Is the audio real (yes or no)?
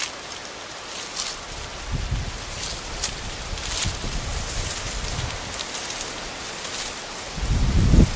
yes